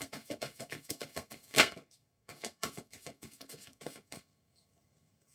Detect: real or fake fake